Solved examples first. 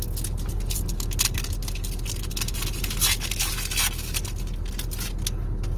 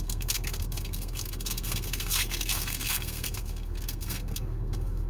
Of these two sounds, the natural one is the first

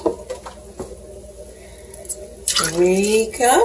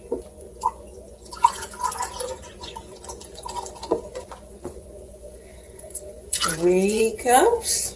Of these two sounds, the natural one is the first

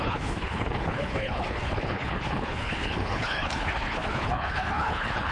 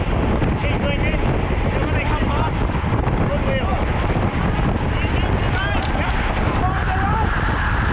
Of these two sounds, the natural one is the second